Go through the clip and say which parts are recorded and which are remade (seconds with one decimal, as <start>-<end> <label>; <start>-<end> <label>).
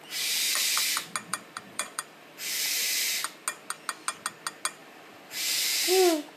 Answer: 0.0-1.3 recorded; 1.3-3.2 remade; 3.2-4.8 recorded; 4.8-5.9 remade; 5.9-6.4 recorded